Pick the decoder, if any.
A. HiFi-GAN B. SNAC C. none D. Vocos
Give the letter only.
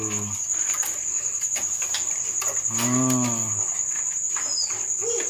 C